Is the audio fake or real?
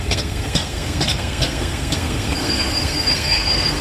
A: fake